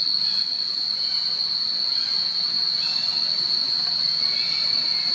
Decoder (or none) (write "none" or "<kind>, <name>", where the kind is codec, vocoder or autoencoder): none